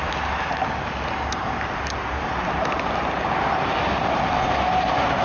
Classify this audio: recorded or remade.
recorded